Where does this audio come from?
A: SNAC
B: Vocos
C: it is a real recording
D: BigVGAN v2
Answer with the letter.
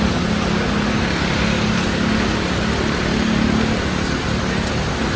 C